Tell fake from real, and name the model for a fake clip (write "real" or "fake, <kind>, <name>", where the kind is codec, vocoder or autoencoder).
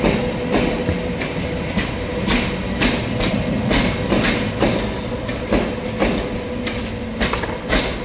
real